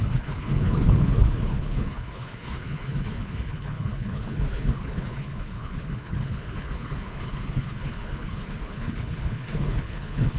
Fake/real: fake